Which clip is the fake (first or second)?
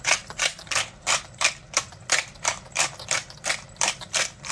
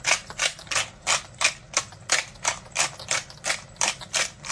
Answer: first